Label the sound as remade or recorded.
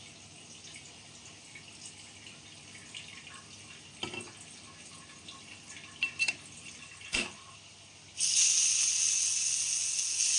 recorded